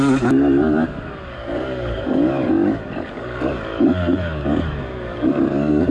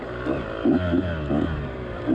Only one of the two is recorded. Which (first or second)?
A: second